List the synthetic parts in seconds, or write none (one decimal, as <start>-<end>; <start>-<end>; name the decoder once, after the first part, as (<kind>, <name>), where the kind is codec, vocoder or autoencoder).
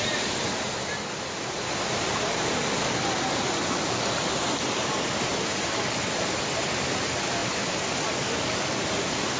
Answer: none